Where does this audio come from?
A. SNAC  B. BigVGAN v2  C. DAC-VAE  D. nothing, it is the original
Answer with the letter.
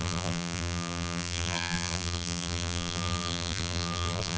B